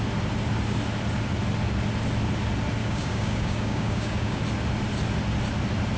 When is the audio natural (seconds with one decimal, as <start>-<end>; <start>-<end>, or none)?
0.0-2.8; 4.4-6.0